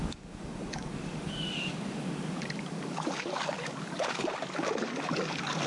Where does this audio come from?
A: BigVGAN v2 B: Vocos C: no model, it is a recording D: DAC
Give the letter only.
D